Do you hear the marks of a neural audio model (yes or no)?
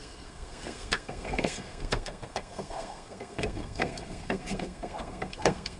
yes